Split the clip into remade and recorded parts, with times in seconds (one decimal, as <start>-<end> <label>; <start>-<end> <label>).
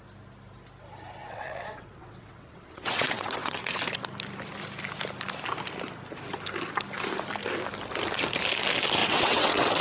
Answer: 0.0-1.2 recorded; 1.2-4.0 remade; 4.0-9.0 recorded; 9.0-9.8 remade